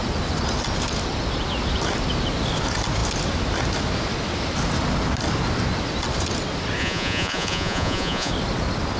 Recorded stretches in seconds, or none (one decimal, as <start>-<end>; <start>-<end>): 0.0-6.8; 8.3-9.0